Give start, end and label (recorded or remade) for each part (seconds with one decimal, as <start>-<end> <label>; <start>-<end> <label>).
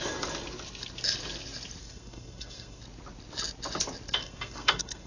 0.0-1.8 recorded; 1.8-2.8 remade; 2.8-4.2 recorded; 4.2-5.1 remade